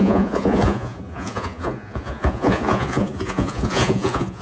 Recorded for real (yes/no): no